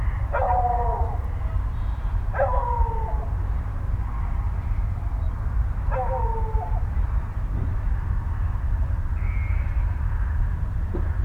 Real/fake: fake